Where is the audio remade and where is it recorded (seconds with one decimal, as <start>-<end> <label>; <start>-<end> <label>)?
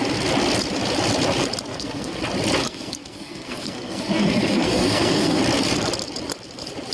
0.0-1.7 recorded; 1.7-2.2 remade; 2.2-2.6 recorded; 2.6-5.4 remade; 5.4-6.9 recorded